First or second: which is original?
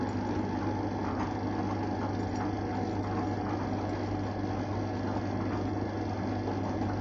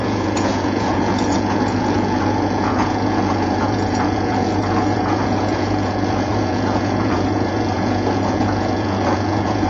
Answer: first